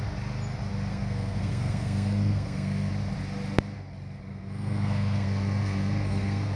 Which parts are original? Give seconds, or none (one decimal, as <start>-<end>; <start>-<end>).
0.0-0.9; 2.9-4.3